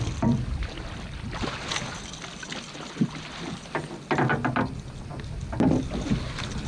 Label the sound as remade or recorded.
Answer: recorded